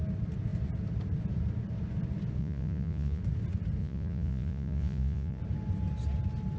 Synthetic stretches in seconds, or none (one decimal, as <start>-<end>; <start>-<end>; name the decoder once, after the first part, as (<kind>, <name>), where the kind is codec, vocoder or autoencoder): 2.4-3.2 (vocoder, Vocos); 3.8-5.4